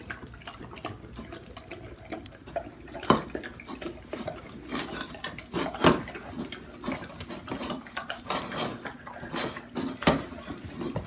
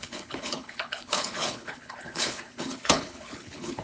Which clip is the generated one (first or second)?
second